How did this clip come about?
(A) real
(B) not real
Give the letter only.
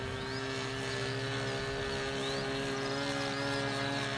A